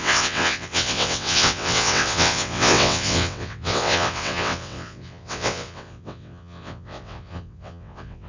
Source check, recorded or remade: remade